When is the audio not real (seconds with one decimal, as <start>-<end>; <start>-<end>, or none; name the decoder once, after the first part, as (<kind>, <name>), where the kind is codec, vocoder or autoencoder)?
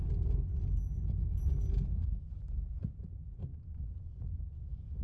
none